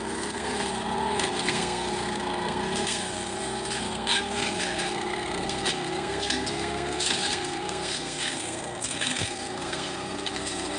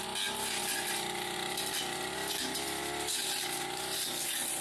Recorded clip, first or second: second